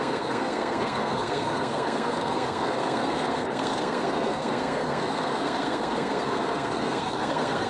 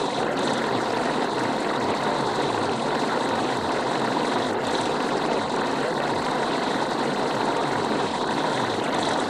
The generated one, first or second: first